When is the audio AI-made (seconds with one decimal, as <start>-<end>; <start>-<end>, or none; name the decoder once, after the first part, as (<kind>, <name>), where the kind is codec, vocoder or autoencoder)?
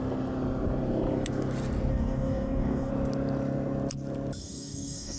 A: 1.9-2.9 (codec, DAC); 4.4-5.2